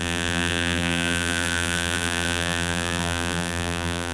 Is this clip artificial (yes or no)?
yes